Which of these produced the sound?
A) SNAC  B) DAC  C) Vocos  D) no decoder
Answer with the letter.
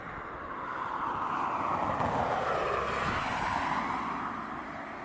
D